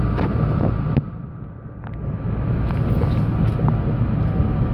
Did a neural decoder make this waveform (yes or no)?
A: no